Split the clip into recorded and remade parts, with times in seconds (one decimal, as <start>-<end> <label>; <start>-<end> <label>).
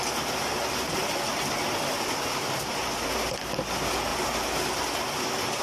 0.0-5.6 recorded